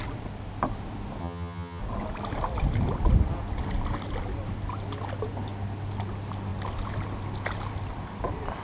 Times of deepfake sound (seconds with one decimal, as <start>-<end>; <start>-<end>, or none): 1.2-1.8